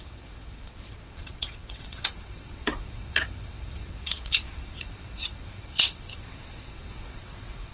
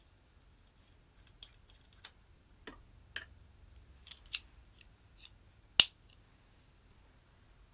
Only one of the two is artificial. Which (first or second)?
first